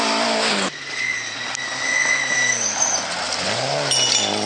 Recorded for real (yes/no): yes